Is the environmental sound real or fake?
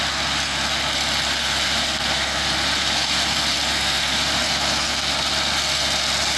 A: real